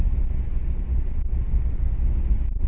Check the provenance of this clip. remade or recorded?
recorded